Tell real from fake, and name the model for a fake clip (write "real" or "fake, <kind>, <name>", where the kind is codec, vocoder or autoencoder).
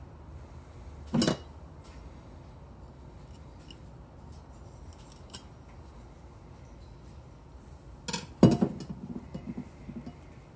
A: real